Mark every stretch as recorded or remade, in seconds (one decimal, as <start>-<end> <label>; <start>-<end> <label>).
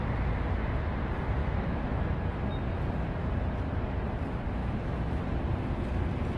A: 0.0-1.4 recorded; 1.4-2.0 remade; 2.0-4.6 recorded; 4.6-5.2 remade; 5.2-6.4 recorded